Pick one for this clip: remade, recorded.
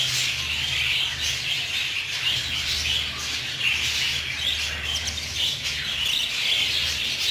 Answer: recorded